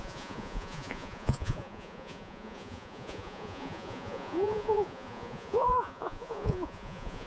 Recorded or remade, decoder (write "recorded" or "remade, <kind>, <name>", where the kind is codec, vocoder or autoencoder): remade, vocoder, Vocos